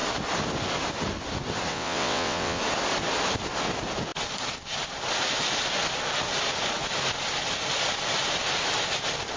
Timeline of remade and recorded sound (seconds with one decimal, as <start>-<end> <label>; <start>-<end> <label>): 0.0-1.7 recorded; 1.7-2.6 remade; 2.6-9.4 recorded